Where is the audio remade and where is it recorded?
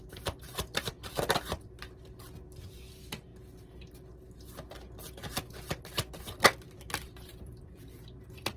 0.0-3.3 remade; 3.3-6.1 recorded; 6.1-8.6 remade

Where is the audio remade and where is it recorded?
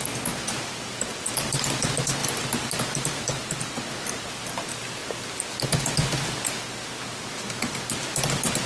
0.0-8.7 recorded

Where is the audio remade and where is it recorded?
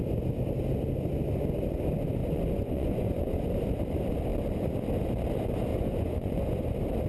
0.0-2.2 recorded; 2.2-3.4 remade; 3.4-5.7 recorded; 5.7-6.6 remade; 6.6-7.1 recorded